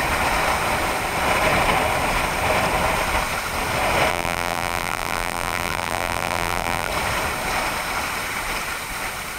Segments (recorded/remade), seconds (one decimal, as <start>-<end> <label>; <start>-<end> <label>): 0.0-4.1 recorded; 4.1-6.9 remade; 6.9-9.4 recorded